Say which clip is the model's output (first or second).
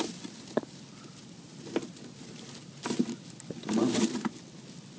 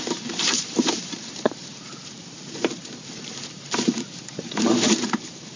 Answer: second